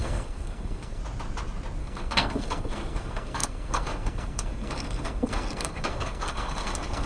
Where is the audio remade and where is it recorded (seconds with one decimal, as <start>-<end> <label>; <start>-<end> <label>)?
0.0-1.0 remade; 1.0-1.8 recorded; 1.8-7.1 remade

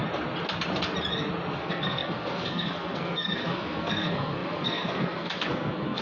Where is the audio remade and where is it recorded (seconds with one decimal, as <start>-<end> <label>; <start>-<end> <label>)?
0.0-1.6 recorded; 1.6-6.0 remade

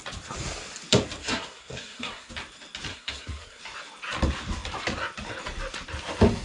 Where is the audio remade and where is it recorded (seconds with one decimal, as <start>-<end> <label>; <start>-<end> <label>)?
0.0-1.2 recorded; 1.2-2.3 remade; 2.3-2.9 recorded; 2.9-3.6 remade; 3.6-6.4 recorded

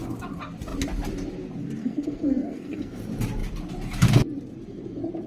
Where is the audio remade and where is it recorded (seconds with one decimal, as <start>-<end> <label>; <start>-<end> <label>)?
0.0-1.8 recorded; 1.8-3.0 remade; 3.0-5.3 recorded

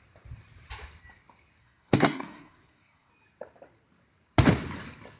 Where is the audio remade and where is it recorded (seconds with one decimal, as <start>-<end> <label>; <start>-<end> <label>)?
0.0-1.6 recorded; 1.6-3.1 remade; 3.1-5.2 recorded

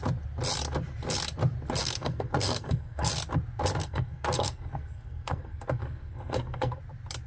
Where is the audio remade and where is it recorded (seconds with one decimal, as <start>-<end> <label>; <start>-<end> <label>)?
0.0-1.8 recorded; 1.8-3.1 remade; 3.1-3.8 recorded; 3.8-6.8 remade; 6.8-7.3 recorded

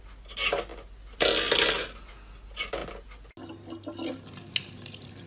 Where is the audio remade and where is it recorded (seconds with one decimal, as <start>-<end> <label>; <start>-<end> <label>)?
0.0-5.3 recorded